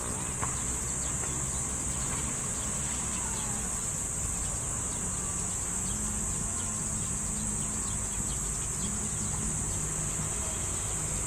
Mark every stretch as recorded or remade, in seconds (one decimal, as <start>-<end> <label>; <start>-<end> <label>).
0.0-11.3 recorded